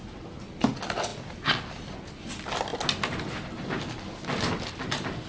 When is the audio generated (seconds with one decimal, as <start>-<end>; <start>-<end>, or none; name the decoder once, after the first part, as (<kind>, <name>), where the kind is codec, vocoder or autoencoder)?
none